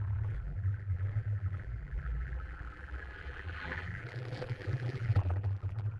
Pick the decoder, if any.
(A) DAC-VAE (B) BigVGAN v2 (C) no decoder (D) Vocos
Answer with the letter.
B